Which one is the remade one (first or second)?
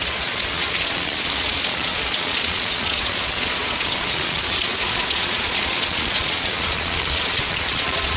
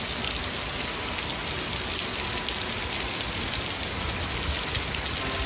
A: first